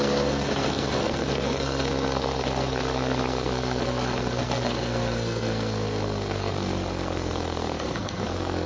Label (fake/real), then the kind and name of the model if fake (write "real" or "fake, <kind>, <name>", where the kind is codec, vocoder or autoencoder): fake, codec, SNAC